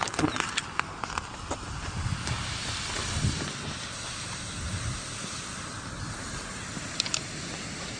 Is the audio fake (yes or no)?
no